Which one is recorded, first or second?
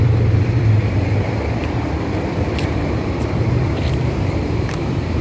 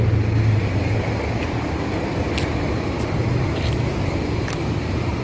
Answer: second